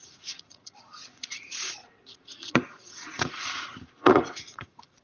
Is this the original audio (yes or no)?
no